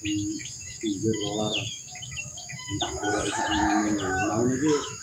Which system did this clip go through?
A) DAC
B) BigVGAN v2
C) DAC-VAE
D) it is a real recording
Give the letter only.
C